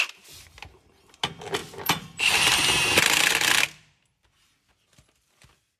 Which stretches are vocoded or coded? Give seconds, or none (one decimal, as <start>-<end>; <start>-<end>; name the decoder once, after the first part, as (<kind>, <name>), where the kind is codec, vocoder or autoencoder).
1.6-4.7 (vocoder, BigVGAN v2)